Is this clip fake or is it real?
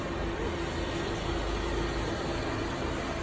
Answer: real